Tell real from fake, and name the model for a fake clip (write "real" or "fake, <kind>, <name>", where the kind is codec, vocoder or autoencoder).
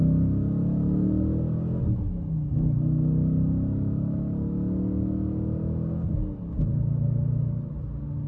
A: real